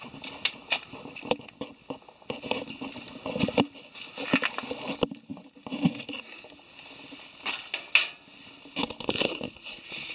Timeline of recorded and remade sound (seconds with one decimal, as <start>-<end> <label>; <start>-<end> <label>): 0.0-10.1 recorded